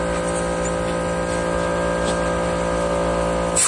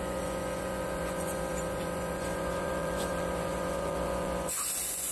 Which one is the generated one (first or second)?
second